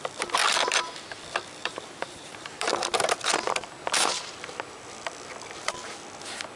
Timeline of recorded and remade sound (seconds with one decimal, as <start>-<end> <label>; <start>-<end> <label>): 0.0-1.6 recorded; 1.6-2.7 remade; 2.7-6.6 recorded